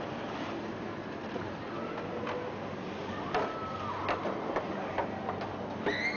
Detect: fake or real real